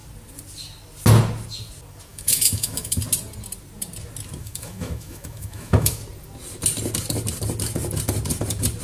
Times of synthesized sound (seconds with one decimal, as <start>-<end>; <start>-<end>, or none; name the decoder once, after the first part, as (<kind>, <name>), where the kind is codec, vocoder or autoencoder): 2.1-3.0 (autoencoder, DAC-VAE); 4.4-6.0